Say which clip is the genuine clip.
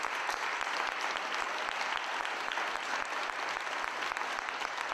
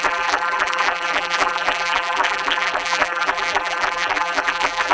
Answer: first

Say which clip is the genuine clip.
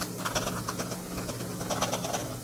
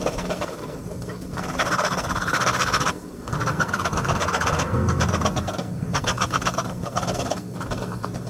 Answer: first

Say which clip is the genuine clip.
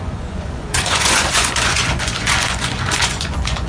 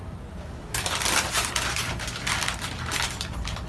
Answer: second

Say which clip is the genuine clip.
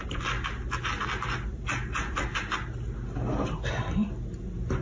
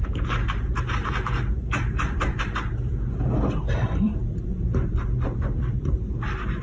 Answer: first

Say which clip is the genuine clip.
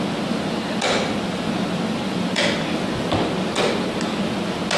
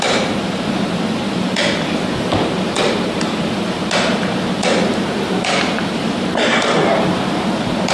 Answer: first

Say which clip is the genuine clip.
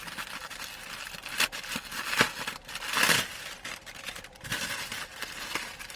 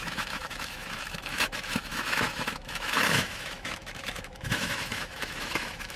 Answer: first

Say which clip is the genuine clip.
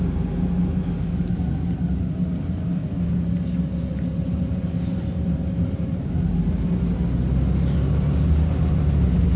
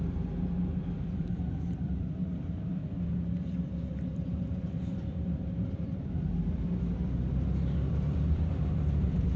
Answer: first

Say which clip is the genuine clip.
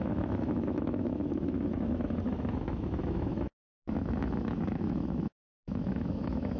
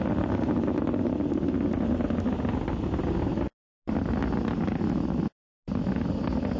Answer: second